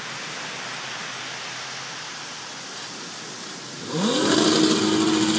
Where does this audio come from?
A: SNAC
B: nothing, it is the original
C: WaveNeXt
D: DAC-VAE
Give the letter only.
B